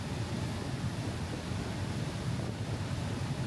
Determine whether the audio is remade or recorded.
recorded